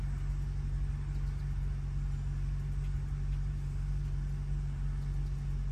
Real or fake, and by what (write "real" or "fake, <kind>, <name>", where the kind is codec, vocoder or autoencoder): real